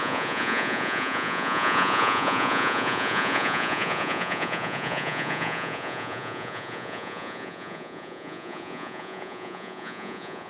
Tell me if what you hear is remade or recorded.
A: remade